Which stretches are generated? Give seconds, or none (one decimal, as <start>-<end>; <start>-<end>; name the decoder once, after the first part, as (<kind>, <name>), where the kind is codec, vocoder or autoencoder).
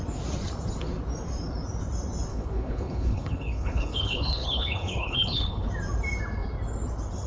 2.3-5.7 (codec, HILCodec)